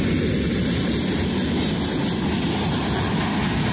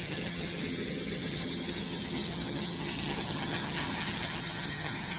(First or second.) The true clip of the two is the first